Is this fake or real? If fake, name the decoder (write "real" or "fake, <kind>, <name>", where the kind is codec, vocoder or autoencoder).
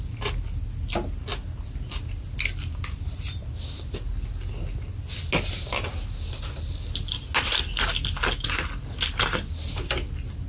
real